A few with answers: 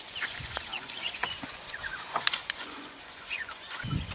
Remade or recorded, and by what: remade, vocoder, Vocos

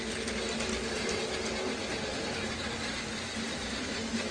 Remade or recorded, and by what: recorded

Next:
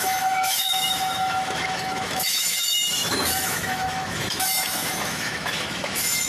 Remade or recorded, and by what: remade, autoencoder, DAC-VAE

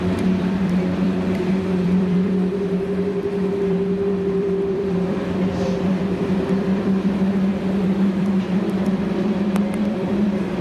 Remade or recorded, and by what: remade, vocoder, BigVGAN v2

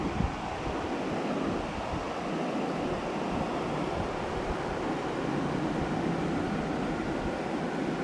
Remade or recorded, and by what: recorded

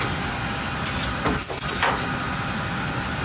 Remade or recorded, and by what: recorded